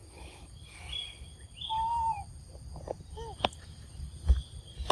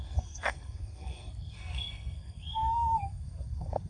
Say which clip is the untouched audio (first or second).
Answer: first